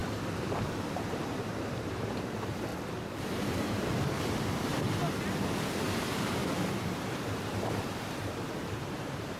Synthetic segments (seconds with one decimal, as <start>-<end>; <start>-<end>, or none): 0.0-2.7; 3.2-4.7; 6.0-6.4; 7.0-9.4